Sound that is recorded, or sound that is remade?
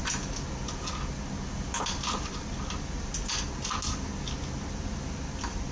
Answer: recorded